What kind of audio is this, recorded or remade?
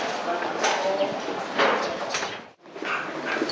recorded